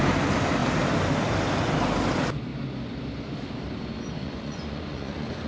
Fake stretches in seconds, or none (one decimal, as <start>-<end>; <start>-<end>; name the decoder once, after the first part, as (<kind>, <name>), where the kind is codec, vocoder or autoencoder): 4.2-5.5 (vocoder, Vocos)